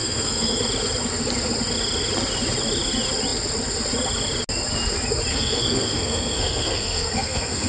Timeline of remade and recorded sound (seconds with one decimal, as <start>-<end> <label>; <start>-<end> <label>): 0.0-0.6 remade; 0.6-5.3 recorded; 5.3-7.7 remade